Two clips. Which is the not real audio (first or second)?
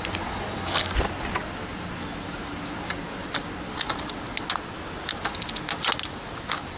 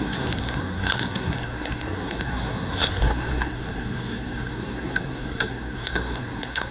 second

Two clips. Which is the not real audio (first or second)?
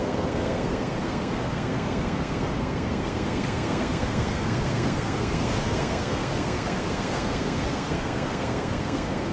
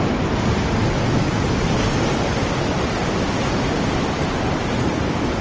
first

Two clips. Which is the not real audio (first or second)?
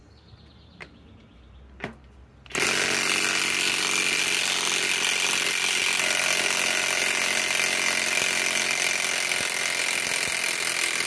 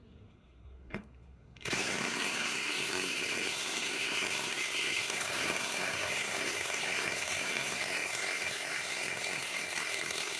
second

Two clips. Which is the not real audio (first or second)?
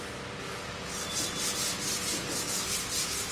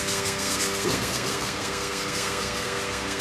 second